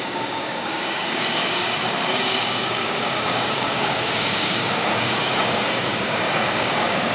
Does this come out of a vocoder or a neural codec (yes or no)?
yes